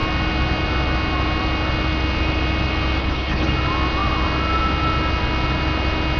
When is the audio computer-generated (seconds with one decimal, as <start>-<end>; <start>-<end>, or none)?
3.0-3.5